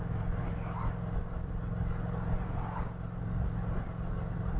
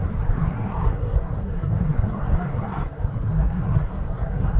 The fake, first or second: second